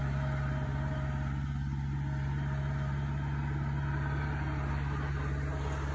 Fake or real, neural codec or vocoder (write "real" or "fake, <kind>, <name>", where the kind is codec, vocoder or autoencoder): real